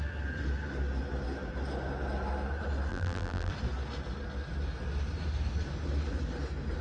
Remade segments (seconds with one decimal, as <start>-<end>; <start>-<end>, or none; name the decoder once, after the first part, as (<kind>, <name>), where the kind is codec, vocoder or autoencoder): 2.9-3.5 (vocoder, BigVGAN v2)